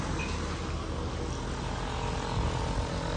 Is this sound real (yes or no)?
yes